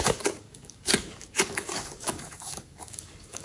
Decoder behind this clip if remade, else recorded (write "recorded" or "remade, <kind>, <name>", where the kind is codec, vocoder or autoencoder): remade, codec, DAC